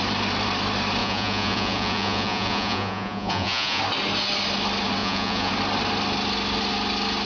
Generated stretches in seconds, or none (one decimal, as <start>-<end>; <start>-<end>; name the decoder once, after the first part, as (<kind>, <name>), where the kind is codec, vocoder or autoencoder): 1.0-3.8 (vocoder, Vocos); 5.0-5.5